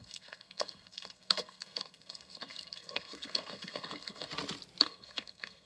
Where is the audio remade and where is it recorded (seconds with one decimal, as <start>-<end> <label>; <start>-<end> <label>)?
0.0-4.3 remade; 4.3-4.8 recorded; 4.8-5.7 remade